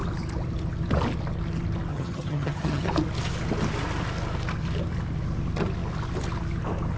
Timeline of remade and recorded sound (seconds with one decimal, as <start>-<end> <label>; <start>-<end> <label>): 0.0-1.9 recorded; 1.9-2.9 remade; 2.9-7.0 recorded